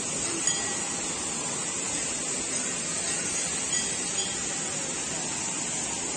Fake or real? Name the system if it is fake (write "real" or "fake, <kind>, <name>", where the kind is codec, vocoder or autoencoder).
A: real